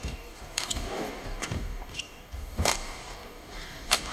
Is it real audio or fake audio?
fake